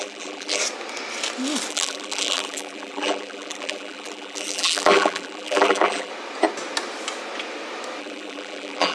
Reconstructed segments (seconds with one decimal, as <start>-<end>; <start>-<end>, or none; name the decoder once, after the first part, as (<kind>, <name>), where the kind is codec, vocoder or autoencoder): 0.0-0.6 (vocoder, BigVGAN v2); 1.7-6.1; 8.0-8.9